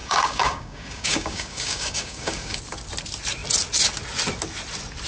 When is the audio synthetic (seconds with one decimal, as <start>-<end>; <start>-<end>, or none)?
0.0-2.6

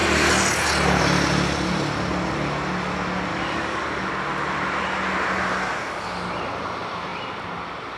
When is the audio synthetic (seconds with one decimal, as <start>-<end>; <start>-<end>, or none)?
3.3-4.1

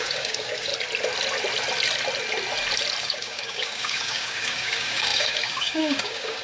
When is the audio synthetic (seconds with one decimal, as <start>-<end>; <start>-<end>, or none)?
0.0-0.7; 3.0-6.4

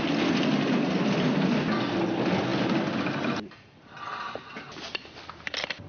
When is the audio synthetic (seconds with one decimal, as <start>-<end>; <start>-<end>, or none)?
none